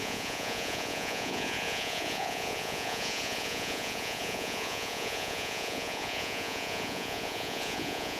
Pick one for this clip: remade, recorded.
remade